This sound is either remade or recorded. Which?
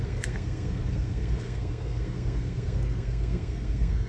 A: remade